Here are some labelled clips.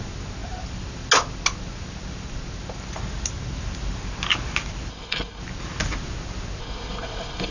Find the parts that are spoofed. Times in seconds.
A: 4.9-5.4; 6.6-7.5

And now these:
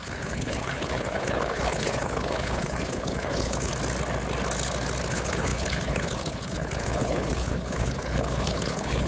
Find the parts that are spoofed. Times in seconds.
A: 0.0-3.7; 5.1-9.1

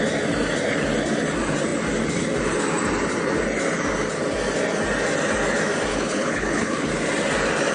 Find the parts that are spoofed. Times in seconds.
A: 5.9-6.9

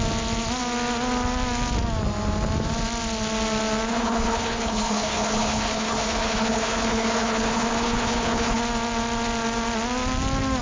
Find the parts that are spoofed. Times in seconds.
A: 3.9-8.6

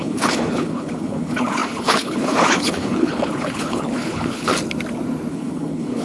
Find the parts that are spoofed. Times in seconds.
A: 0.0-4.5; 5.3-6.0

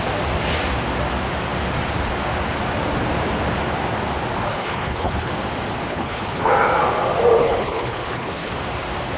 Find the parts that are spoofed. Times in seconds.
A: 4.5-5.3; 5.9-6.5; 7.4-8.5

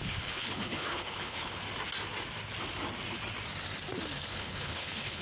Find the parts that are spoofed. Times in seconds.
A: 0.0-1.6; 4.3-5.2

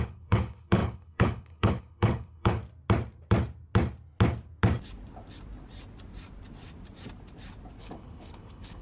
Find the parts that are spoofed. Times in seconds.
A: 0.0-2.6; 7.8-8.8